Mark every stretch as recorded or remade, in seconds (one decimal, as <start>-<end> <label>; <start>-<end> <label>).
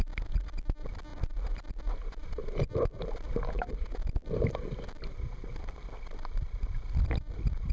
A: 0.0-7.7 recorded